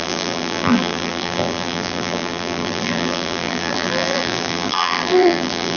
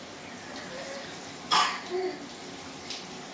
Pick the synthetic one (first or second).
first